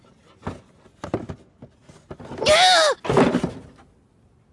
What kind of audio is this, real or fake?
real